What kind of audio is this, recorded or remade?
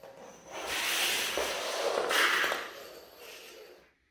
recorded